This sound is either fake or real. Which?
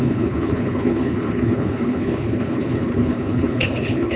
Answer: fake